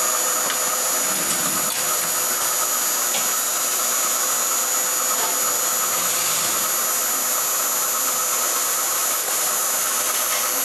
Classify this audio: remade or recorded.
recorded